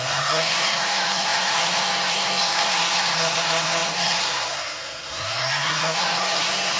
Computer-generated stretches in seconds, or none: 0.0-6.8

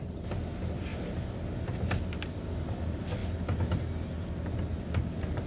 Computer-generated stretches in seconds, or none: none

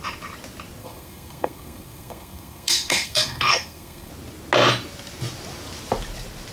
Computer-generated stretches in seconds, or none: 0.8-4.1

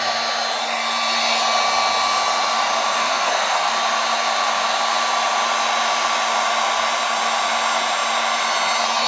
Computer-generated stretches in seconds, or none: 3.0-3.7

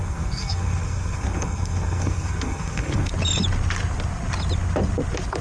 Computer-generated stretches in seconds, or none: 0.0-3.1

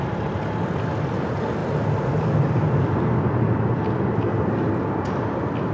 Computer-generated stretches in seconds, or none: none

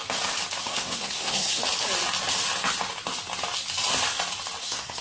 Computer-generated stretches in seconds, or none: 0.6-1.6; 4.6-5.0